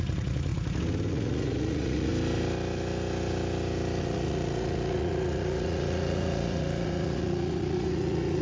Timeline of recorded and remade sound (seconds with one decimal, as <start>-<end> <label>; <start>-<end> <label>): 0.0-0.5 remade; 0.5-1.1 recorded; 1.1-2.1 remade; 2.1-4.0 recorded; 4.0-8.4 remade